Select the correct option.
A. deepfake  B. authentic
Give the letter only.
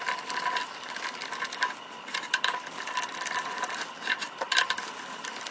A